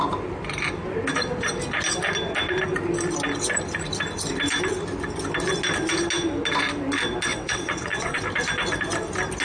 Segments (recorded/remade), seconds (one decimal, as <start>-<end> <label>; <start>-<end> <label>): 0.0-7.3 recorded; 7.3-8.2 remade; 8.2-9.4 recorded